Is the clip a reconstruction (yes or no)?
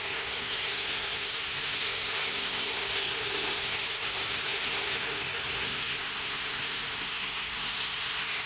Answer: yes